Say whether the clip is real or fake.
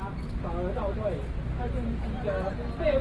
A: real